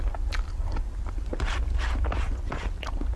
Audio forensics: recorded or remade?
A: recorded